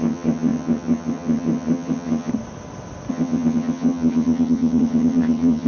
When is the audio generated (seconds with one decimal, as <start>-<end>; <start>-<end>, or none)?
0.0-2.3; 3.1-5.7